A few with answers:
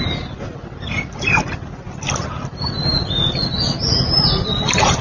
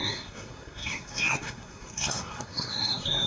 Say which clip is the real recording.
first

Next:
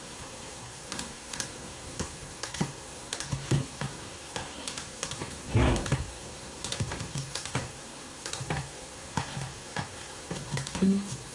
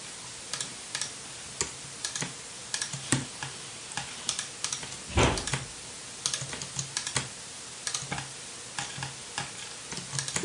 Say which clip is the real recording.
second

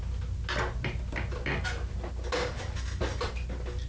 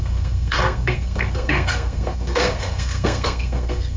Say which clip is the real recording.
first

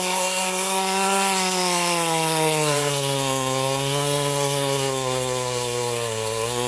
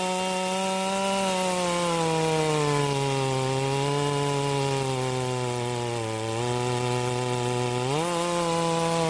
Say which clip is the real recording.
second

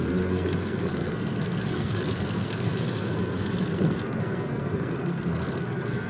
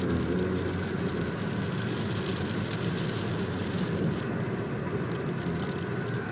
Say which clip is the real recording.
second